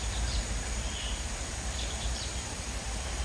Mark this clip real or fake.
fake